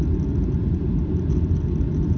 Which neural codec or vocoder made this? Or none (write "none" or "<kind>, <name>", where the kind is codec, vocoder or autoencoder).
none